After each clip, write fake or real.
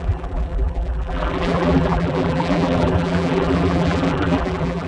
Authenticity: fake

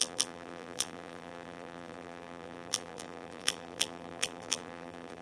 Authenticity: fake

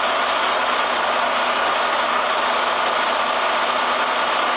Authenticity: real